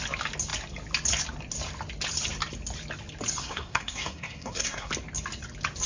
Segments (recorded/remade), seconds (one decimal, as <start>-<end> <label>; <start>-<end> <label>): 0.0-3.4 recorded; 3.4-4.9 remade; 4.9-5.9 recorded